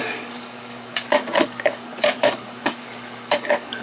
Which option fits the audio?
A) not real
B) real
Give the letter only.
A